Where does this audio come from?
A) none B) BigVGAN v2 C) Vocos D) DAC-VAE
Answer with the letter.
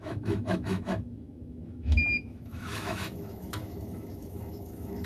D